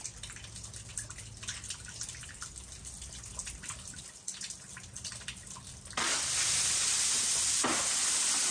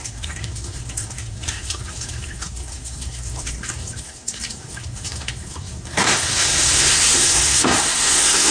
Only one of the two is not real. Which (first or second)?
second